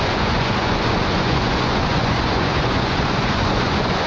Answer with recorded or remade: remade